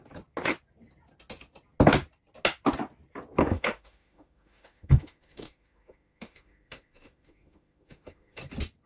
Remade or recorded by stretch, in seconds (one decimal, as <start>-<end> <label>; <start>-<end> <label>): 0.0-3.4 recorded; 3.4-8.4 remade; 8.4-8.9 recorded